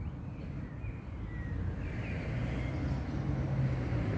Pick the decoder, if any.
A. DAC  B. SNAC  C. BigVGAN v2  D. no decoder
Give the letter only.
D